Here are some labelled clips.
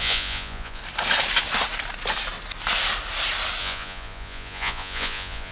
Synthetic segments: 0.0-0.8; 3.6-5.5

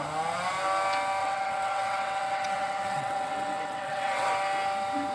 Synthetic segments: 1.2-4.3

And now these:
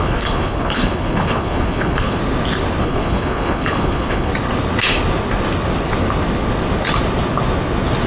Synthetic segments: 0.0-2.2; 2.8-4.3

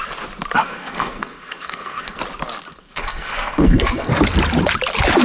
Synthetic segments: 0.6-2.2; 2.7-4.1

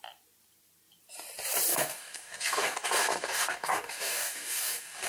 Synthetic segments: 1.7-5.1

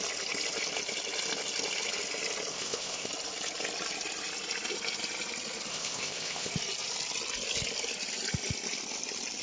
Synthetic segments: 2.5-3.1; 5.7-6.5

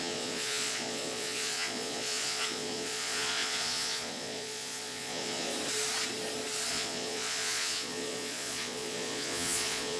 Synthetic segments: 0.0-5.5; 6.7-10.0